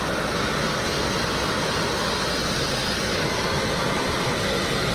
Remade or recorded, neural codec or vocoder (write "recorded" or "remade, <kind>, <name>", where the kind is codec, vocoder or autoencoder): recorded